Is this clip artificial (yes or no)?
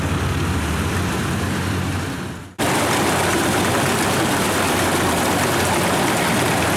yes